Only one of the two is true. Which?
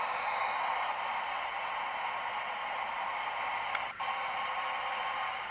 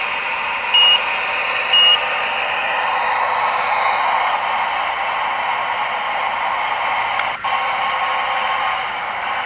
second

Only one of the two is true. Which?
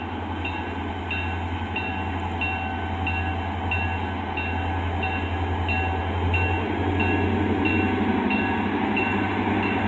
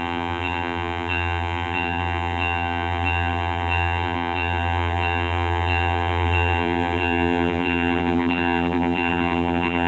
first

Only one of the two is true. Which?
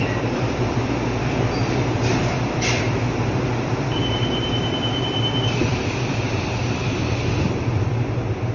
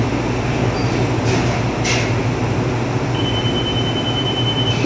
second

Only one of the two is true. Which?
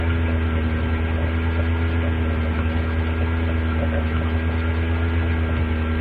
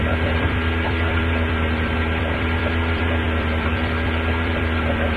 first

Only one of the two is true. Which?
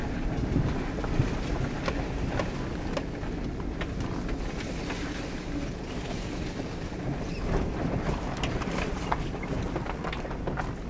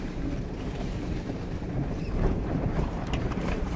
first